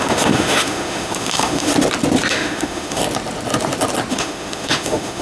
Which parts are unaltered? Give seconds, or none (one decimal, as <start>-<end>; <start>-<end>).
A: 1.7-2.3; 3.0-4.1